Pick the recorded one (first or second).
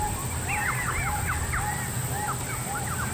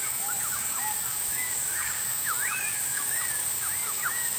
first